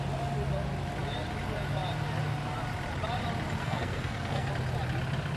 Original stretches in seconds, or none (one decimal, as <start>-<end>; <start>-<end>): 0.0-3.6; 4.5-5.4